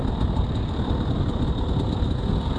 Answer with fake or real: real